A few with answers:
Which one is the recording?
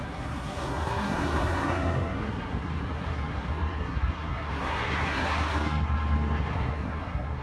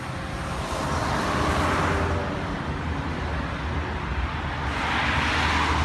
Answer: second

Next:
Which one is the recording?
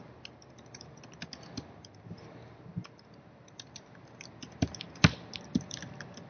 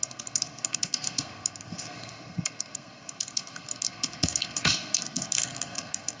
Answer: first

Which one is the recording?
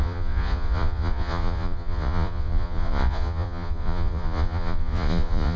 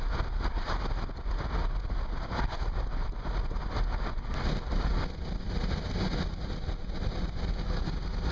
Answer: second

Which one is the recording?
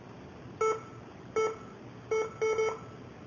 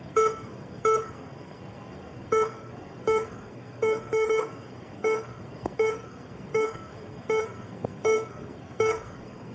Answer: first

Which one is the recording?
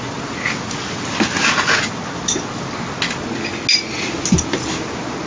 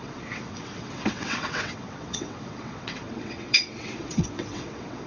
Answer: first